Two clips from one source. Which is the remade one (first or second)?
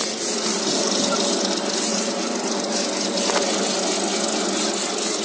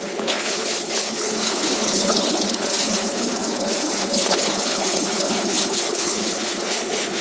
second